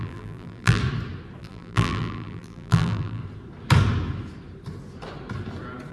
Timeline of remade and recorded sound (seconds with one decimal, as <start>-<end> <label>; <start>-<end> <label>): 0.0-0.8 remade; 0.8-1.4 recorded; 1.4-3.2 remade; 3.2-5.9 recorded